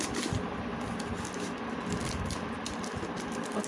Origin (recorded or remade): recorded